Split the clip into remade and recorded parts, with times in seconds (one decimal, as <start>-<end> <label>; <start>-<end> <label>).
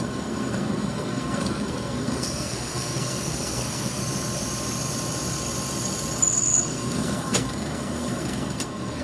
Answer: 0.0-4.0 remade; 4.0-6.3 recorded; 6.3-9.0 remade